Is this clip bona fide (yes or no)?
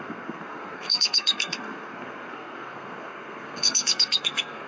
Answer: no